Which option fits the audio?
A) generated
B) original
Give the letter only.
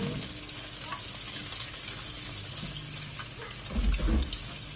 B